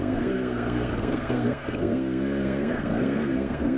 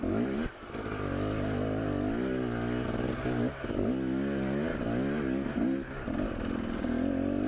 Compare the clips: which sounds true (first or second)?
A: second